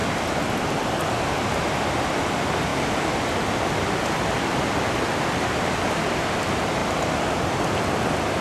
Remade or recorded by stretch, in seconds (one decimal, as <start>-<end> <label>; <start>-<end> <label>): 0.0-0.6 recorded; 0.6-6.8 remade; 6.8-7.6 recorded; 7.6-8.4 remade